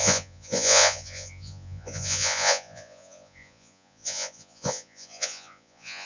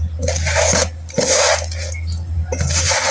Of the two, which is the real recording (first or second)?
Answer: second